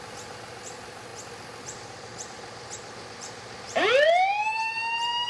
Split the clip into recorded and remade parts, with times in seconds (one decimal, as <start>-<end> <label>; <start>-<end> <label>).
0.0-1.1 remade; 1.1-1.6 recorded; 1.6-5.3 remade